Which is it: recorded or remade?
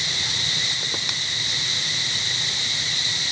recorded